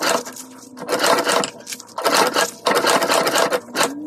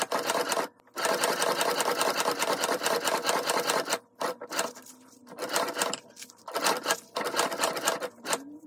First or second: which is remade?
second